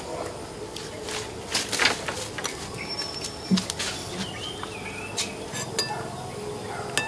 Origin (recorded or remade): recorded